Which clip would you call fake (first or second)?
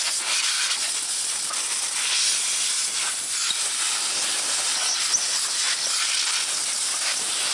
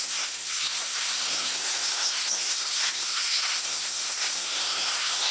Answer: second